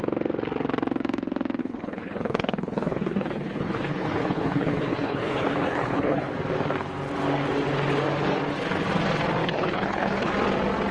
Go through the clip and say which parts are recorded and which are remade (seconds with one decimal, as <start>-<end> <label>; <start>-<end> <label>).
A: 0.0-1.6 recorded; 1.6-6.3 remade; 6.3-9.4 recorded; 9.4-10.3 remade; 10.3-10.9 recorded